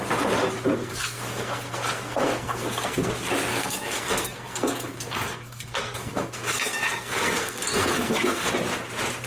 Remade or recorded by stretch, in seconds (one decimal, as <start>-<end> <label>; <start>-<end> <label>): 0.0-0.8 recorded; 0.8-3.1 remade; 3.1-3.5 recorded; 3.5-8.5 remade; 8.5-9.3 recorded